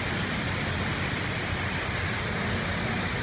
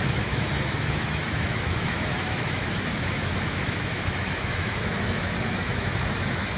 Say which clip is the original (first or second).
first